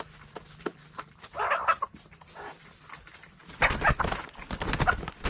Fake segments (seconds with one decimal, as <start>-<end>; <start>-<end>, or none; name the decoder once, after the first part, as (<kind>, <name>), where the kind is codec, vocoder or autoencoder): none